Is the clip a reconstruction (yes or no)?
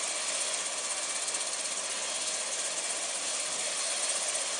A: no